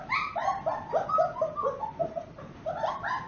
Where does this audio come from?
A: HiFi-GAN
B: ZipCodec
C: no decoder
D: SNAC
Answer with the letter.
C